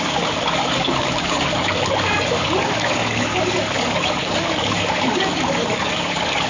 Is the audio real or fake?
fake